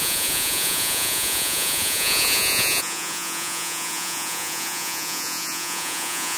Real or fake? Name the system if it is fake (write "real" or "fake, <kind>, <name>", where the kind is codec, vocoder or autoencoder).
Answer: fake, vocoder, Vocos